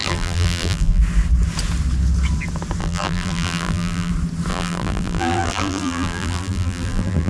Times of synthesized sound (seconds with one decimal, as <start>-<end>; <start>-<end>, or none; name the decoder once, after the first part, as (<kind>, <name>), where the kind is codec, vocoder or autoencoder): 0.0-1.0 (vocoder, BigVGAN v2); 2.8-4.1; 4.5-7.3